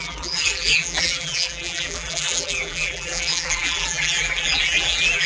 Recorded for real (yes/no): no